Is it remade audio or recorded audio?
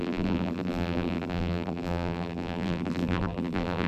remade